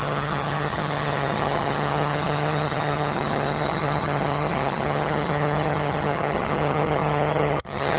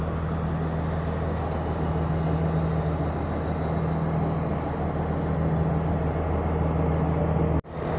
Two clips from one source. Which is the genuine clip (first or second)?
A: second